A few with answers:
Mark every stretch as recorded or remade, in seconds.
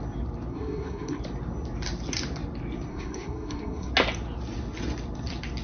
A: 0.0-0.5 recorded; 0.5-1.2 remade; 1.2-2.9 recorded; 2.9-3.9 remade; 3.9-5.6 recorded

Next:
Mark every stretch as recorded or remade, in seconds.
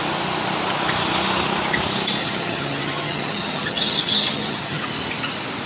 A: 0.0-2.2 recorded; 2.2-4.8 remade; 4.8-5.7 recorded